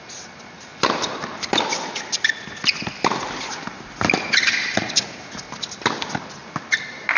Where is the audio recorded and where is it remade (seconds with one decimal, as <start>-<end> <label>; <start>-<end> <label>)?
0.0-7.2 recorded

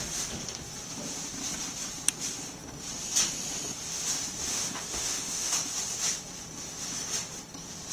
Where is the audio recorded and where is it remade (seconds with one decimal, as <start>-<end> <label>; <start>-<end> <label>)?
0.0-4.5 recorded; 4.5-5.5 remade; 5.5-7.9 recorded

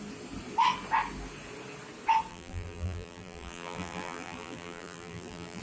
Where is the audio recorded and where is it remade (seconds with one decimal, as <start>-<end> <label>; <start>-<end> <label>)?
0.0-2.3 recorded; 2.3-5.6 remade

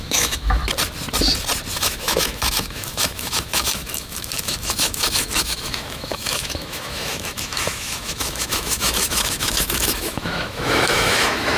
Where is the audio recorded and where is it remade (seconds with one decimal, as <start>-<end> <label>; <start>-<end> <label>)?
0.0-0.6 remade; 0.6-1.7 recorded; 1.7-11.6 remade

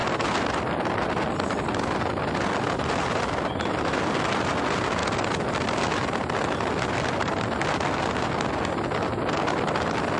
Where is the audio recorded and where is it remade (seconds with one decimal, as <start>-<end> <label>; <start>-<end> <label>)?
0.0-10.2 recorded

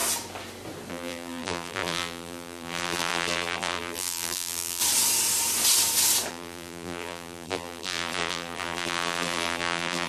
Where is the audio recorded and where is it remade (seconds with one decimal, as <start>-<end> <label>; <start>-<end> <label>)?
0.0-0.9 recorded; 0.9-4.8 remade; 4.8-6.3 recorded; 6.3-10.1 remade